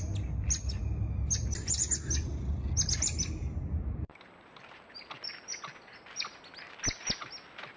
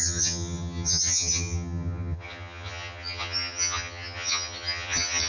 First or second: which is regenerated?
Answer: second